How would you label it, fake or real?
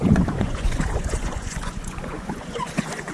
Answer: fake